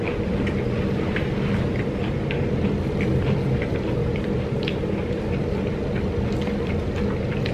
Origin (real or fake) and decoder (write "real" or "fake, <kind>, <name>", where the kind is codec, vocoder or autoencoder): real